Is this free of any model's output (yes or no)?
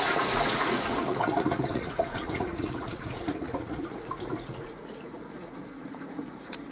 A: no